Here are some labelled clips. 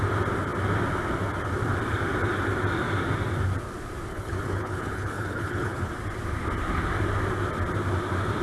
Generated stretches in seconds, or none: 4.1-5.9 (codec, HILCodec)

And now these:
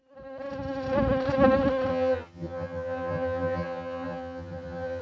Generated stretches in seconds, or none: 1.9-5.0 (vocoder, HiFi-GAN)

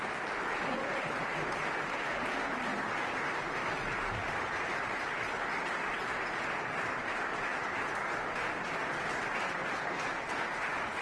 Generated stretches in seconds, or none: none

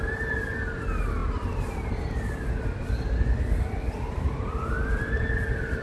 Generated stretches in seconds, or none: none